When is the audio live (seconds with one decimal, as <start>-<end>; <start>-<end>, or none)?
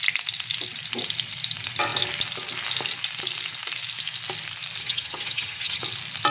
0.0-4.8; 5.8-6.3